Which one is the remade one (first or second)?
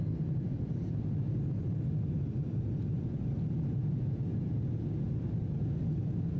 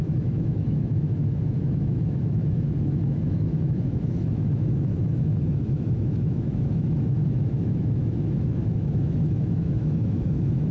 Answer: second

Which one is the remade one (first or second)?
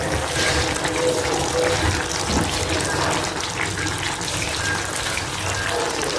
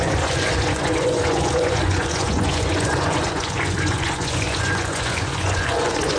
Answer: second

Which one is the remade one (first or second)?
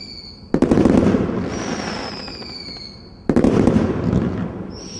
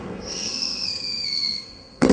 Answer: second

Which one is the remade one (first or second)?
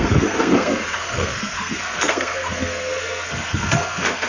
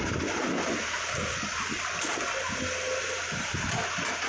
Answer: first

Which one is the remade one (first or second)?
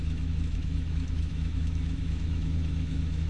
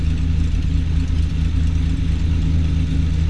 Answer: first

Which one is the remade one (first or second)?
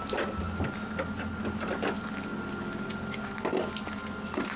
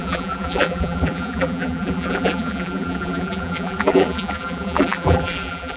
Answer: second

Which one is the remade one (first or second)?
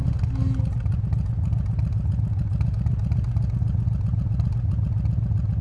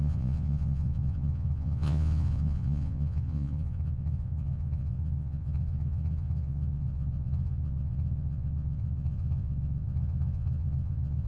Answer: second